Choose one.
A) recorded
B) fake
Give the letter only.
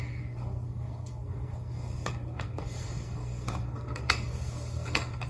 B